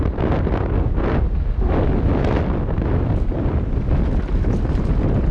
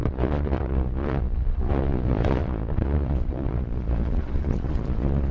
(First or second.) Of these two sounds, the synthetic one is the second